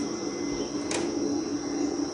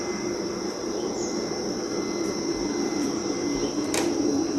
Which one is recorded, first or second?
first